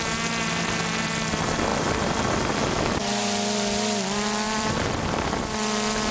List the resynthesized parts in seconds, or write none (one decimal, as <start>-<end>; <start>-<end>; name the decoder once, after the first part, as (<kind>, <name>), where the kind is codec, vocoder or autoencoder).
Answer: 1.7-5.4 (vocoder, BigVGAN v2)